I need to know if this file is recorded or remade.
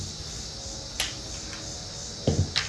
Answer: recorded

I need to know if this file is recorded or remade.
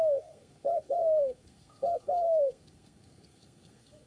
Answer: remade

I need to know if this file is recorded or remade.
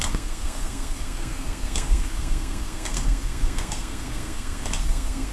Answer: remade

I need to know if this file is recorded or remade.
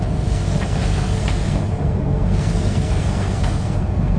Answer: remade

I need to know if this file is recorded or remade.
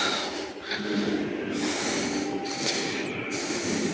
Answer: recorded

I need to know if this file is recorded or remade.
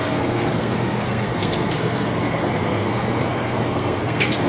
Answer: remade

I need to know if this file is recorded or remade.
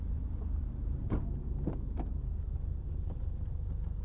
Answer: recorded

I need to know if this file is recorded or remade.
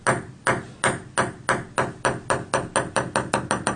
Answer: recorded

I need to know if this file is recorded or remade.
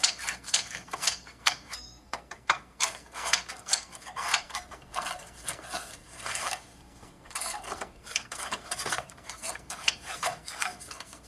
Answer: remade